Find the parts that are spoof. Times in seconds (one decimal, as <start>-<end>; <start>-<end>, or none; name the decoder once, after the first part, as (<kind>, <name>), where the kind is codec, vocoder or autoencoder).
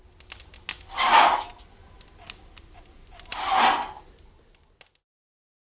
none